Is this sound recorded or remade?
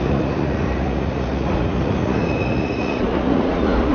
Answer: remade